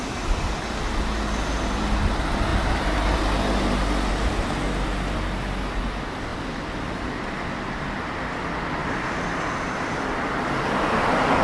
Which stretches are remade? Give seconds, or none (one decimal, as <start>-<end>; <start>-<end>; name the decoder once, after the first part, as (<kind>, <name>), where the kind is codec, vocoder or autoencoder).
none